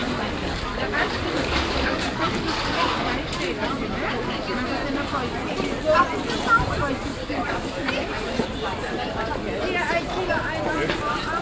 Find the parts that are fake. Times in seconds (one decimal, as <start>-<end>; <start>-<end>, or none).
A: 0.0-3.1; 7.1-7.9